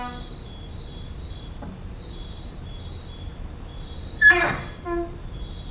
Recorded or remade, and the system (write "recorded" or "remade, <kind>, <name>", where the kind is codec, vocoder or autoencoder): remade, vocoder, BigVGAN v2